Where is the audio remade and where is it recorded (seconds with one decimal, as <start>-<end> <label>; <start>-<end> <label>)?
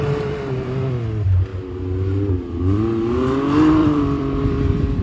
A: 0.0-3.8 recorded; 3.8-4.4 remade; 4.4-5.0 recorded